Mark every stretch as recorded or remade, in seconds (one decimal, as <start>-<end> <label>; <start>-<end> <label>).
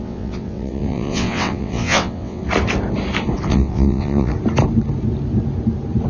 0.0-2.4 remade; 2.4-3.5 recorded; 3.5-4.3 remade; 4.3-6.1 recorded